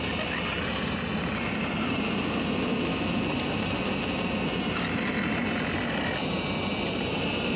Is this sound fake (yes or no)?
no